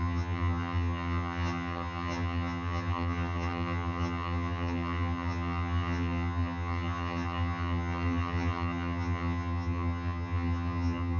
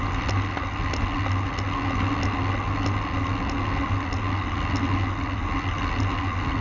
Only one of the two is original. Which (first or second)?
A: second